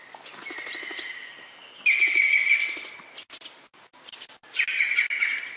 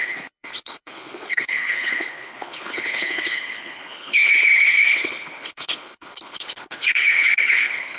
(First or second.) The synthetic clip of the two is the second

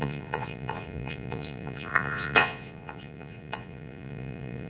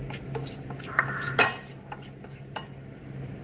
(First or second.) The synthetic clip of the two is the first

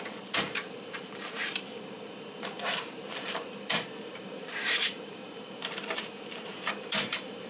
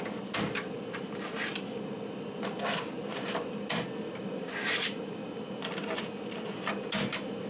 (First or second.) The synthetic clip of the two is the first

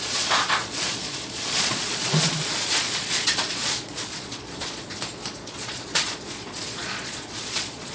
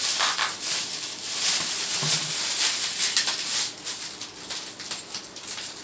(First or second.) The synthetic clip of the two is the first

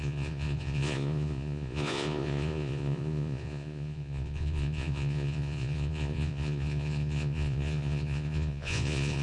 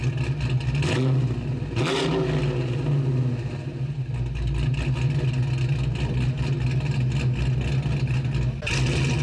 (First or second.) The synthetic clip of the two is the first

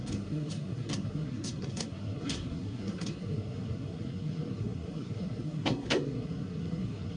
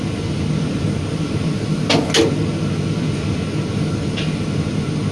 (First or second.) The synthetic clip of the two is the first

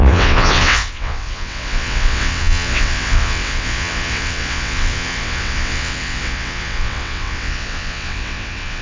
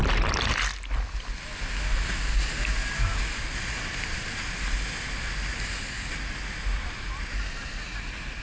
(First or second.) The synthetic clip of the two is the first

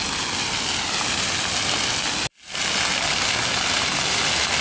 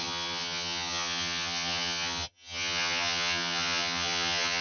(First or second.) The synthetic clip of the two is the second